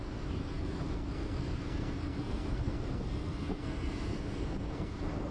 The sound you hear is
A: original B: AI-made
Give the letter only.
B